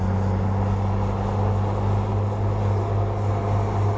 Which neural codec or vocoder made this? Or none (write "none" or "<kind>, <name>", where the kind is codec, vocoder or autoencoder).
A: none